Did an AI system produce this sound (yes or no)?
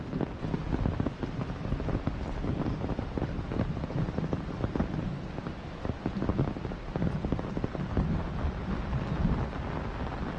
no